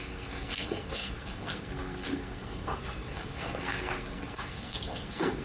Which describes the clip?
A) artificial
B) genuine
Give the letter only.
A